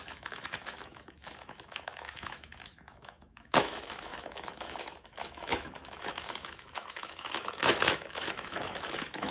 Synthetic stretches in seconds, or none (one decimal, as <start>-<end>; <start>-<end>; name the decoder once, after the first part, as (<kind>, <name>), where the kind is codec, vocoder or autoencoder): 0.0-9.3 (autoencoder, DAC-VAE)